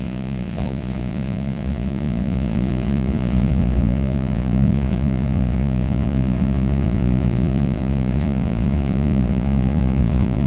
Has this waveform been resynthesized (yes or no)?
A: yes